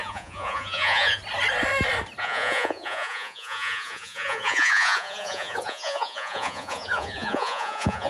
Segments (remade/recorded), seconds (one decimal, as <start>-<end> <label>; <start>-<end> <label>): 0.0-1.2 remade; 1.2-2.2 recorded; 2.2-8.1 remade